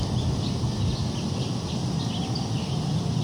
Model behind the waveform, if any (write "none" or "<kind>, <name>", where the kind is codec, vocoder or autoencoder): none